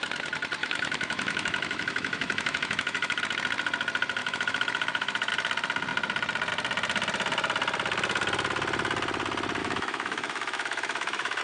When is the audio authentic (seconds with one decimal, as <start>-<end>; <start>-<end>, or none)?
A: 0.0-0.6; 3.2-4.2; 5.3-9.6